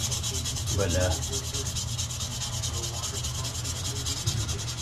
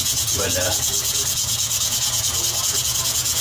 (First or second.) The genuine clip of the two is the first